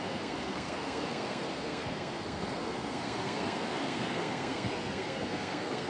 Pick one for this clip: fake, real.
fake